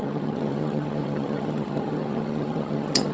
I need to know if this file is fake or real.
fake